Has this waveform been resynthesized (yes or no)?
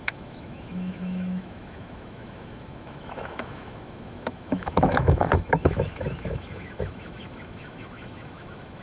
yes